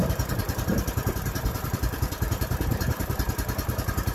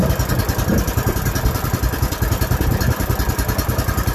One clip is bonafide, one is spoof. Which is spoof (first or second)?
first